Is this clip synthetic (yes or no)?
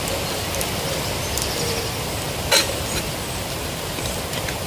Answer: no